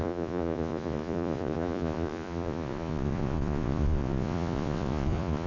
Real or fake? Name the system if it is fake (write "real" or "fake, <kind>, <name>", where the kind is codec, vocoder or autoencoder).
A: fake, vocoder, Vocos